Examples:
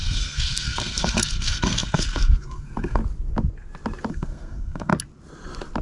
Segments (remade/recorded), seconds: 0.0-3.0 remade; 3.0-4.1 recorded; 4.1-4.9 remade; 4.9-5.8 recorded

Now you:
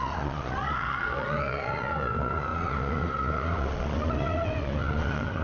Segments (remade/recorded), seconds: 0.0-5.4 remade